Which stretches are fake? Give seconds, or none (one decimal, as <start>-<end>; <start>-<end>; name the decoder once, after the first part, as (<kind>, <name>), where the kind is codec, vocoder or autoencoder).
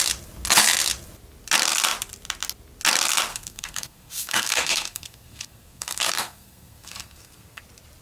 3.3-7.6 (codec, SNAC)